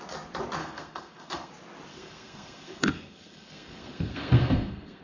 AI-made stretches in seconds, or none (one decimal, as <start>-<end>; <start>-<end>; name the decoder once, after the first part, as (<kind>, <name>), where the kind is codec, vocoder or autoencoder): 0.6-1.5 (codec, SNAC); 1.9-5.0